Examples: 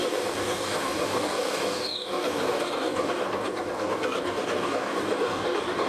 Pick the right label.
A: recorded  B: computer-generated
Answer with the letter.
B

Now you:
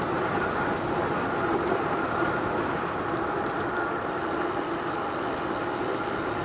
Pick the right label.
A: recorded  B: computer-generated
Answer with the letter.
A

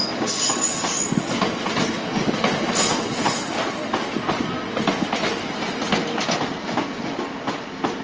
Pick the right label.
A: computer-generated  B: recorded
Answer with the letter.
B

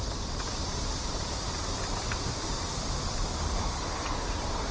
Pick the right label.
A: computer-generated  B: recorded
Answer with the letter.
B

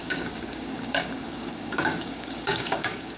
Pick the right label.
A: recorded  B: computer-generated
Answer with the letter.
B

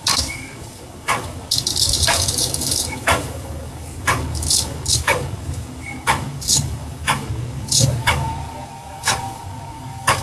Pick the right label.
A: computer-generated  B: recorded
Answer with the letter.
A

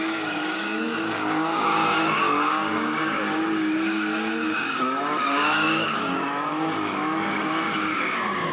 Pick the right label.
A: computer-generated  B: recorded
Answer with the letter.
A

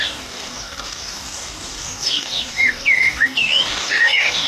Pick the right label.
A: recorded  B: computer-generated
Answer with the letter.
B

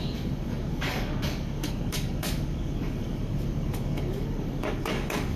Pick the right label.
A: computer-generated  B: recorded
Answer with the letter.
A